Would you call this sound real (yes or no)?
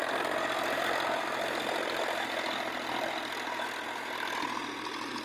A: yes